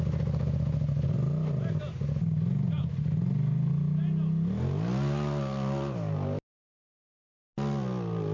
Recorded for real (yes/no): yes